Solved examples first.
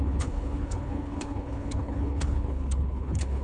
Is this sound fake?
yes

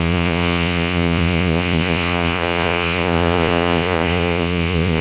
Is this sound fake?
yes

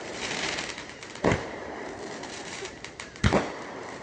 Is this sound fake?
yes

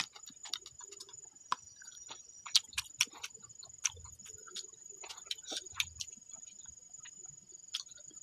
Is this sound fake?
no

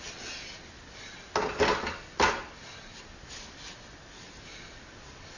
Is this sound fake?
no